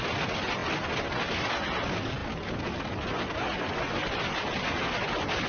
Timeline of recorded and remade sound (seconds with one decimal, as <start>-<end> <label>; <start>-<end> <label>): 0.0-5.5 recorded